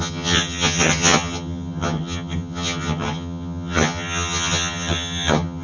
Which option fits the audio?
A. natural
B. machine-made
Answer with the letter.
B